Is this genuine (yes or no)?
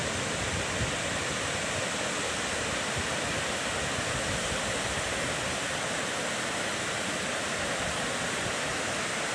yes